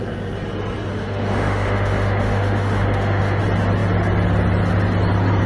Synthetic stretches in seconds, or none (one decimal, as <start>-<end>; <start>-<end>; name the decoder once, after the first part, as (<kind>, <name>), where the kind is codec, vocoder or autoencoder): 0.9-3.4 (autoencoder, DAC-VAE)